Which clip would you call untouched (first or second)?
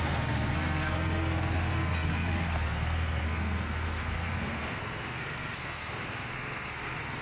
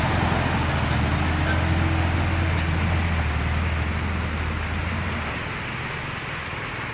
second